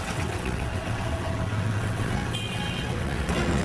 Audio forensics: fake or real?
fake